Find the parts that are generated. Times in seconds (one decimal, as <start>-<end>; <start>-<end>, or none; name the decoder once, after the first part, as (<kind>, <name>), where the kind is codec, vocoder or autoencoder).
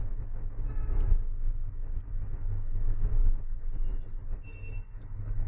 none